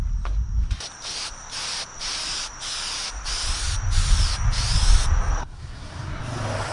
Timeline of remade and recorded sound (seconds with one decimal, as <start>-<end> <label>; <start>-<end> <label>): 0.0-5.4 recorded; 5.4-6.2 remade; 6.2-6.7 recorded